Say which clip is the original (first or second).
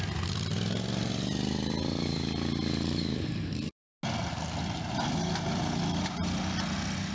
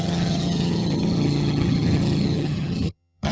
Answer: first